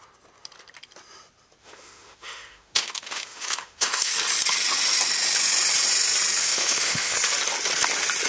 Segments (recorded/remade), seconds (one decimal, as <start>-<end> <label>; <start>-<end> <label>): 0.0-1.6 recorded; 1.6-4.1 remade; 4.1-6.4 recorded; 6.4-7.1 remade; 7.1-8.3 recorded